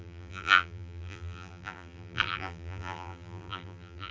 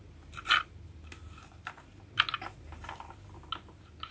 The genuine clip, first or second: second